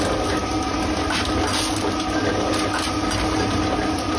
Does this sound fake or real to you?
real